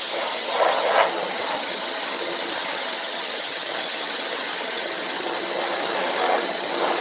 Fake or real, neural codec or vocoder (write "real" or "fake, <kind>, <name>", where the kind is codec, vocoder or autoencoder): fake, vocoder, HiFi-GAN